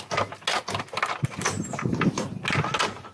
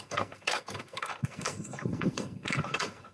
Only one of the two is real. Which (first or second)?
first